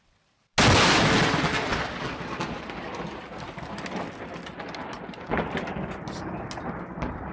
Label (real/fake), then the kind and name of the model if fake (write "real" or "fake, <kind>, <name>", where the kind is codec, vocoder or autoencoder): real